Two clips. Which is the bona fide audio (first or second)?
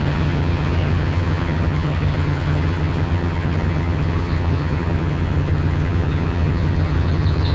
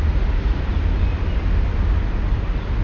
second